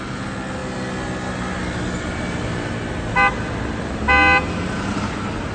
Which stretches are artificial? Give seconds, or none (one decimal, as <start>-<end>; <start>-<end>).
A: none

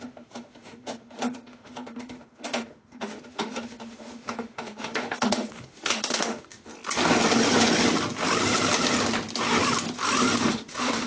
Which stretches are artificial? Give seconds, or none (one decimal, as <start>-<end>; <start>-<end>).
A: 0.0-6.7; 10.5-11.1

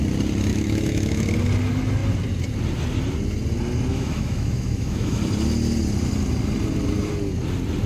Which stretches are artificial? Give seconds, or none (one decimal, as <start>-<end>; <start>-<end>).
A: 0.5-1.3; 3.9-5.2

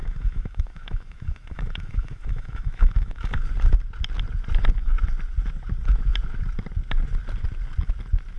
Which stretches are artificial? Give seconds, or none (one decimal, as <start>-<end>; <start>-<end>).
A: 0.0-3.4

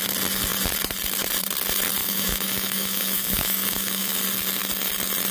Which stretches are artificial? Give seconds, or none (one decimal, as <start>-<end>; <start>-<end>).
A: 2.0-4.2

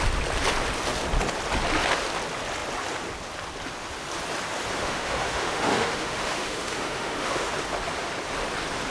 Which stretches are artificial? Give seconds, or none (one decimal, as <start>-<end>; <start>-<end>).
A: 4.8-7.5

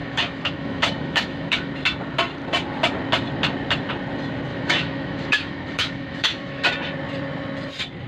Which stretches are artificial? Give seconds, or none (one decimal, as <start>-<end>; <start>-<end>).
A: 0.0-1.7; 4.5-6.7

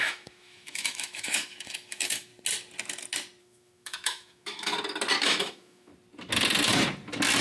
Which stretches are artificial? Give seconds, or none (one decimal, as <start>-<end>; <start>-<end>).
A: 0.0-2.3; 3.4-4.7; 5.2-5.9